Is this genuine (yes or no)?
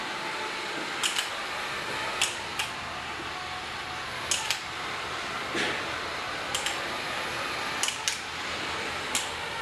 yes